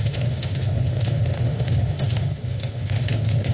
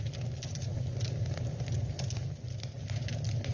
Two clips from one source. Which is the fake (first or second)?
first